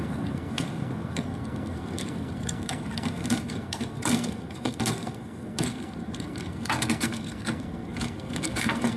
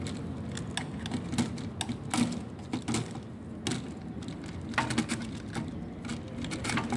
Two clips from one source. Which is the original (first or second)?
second